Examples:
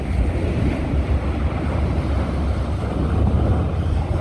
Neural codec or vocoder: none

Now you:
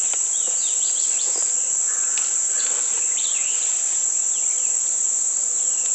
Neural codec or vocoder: none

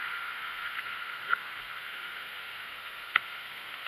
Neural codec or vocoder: codec, SNAC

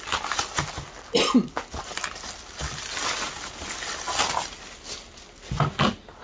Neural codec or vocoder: none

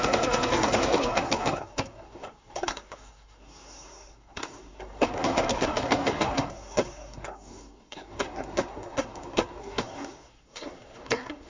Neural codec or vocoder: codec, SNAC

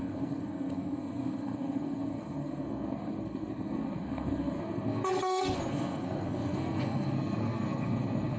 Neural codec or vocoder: codec, SNAC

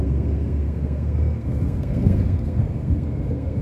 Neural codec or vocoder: codec, SNAC